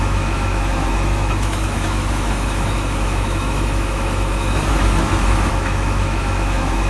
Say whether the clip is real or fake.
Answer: fake